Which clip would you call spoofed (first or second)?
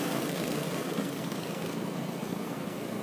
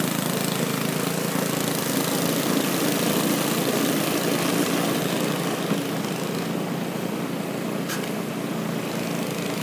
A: first